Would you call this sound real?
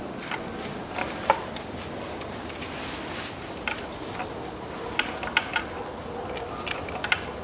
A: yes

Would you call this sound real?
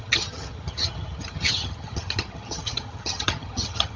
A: no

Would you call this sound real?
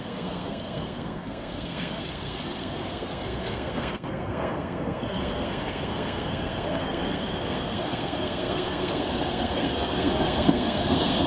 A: no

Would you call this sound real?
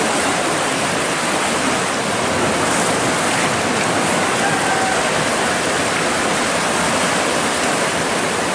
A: yes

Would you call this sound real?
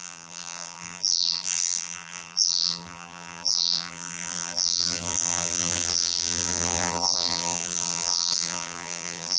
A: no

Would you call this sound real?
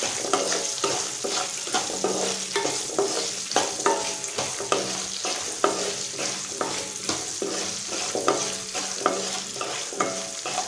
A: yes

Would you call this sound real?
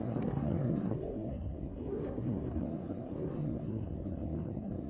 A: no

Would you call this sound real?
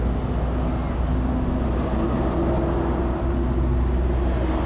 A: yes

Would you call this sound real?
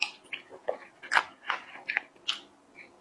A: yes